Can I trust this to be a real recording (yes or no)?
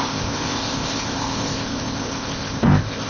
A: no